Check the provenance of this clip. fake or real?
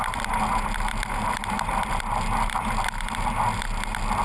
real